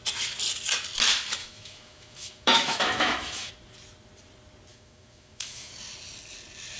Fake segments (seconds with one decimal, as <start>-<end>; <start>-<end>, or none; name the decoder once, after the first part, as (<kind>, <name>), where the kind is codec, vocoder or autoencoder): 1.4-3.5 (autoencoder, DAC-VAE); 4.7-5.7